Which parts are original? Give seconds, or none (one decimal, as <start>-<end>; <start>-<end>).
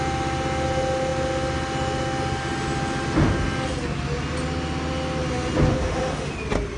0.0-5.7; 6.3-6.8